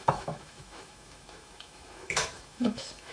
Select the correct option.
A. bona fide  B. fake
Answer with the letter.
B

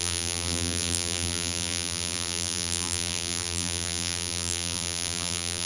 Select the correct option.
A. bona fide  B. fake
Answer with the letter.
B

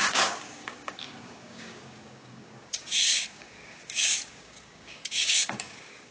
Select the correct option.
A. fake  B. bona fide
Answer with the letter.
A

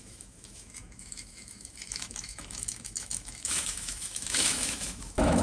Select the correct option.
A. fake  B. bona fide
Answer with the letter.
A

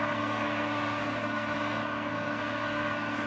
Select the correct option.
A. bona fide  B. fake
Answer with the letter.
B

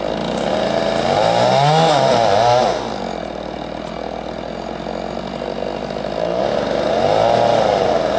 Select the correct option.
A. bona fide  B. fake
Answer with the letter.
A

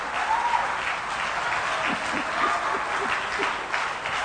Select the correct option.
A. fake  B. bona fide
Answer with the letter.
B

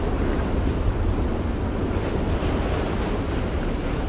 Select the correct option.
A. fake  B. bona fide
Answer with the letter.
B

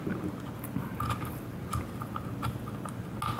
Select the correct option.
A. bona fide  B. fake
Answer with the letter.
A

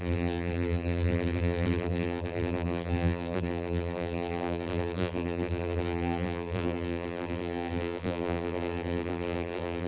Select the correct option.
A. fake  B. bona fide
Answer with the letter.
A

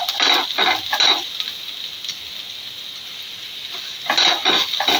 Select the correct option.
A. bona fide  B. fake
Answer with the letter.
A